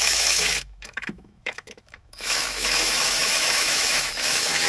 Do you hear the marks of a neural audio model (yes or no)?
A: yes